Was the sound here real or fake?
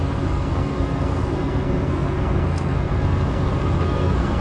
fake